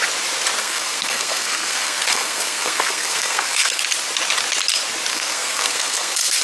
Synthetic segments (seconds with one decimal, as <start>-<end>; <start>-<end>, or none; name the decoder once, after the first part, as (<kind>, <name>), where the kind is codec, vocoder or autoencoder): 0.6-3.8 (codec, SNAC); 5.1-6.4